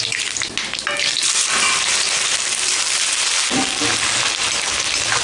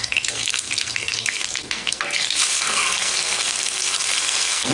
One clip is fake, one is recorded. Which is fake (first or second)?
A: second